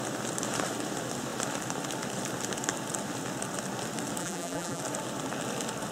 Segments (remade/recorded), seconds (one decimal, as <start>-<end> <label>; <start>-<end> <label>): 0.0-4.2 recorded; 4.2-4.8 remade; 4.8-5.9 recorded